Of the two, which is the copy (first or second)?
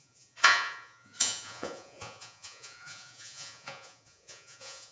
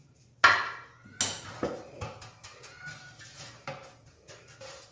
first